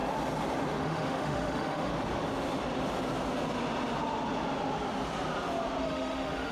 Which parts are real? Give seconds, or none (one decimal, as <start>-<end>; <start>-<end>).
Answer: 0.0-0.8; 1.9-5.8